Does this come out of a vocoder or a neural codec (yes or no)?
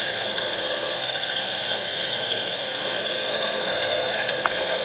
yes